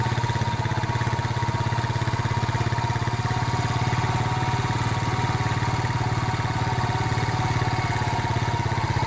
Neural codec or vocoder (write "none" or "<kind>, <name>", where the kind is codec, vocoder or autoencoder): none